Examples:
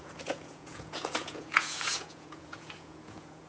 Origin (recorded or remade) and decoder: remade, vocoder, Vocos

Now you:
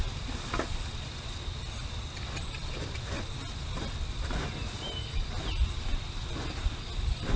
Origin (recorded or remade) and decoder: recorded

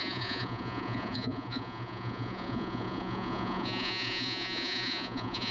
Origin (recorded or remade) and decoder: remade, vocoder, Vocos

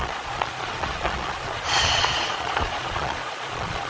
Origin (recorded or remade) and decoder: remade, vocoder, Vocos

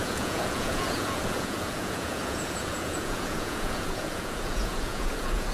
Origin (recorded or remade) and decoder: remade, vocoder, Vocos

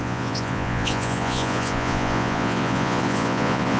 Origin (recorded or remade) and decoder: remade, vocoder, Vocos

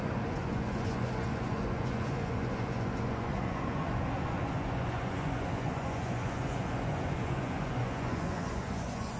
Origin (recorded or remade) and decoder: remade, vocoder, Vocos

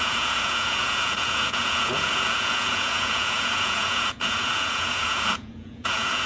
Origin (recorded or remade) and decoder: remade, vocoder, Vocos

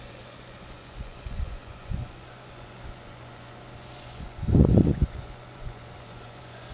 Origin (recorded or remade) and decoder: remade, vocoder, Vocos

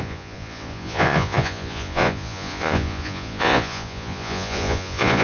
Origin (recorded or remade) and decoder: remade, vocoder, Vocos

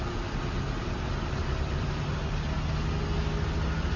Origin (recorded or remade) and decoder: recorded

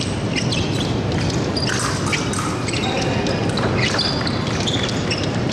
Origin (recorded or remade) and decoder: recorded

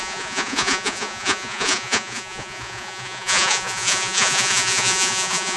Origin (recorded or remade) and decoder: remade, vocoder, Vocos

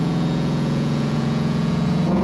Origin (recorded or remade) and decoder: remade, vocoder, Vocos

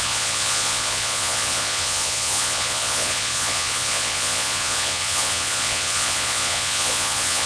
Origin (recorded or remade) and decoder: remade, vocoder, Vocos